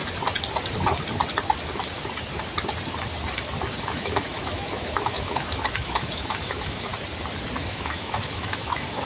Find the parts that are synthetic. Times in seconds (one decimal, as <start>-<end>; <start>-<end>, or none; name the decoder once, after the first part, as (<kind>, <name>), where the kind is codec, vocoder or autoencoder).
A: 3.8-6.9 (autoencoder, DAC-VAE); 7.6-9.1